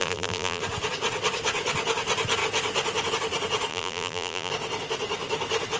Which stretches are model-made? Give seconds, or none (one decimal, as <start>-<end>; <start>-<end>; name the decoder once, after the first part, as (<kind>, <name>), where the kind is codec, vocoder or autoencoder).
0.0-0.6 (vocoder, BigVGAN v2); 3.7-4.5